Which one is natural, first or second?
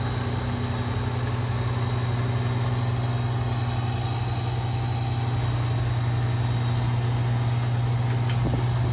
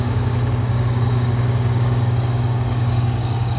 first